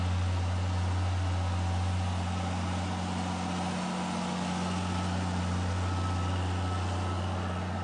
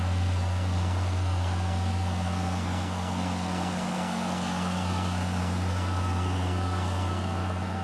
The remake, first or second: second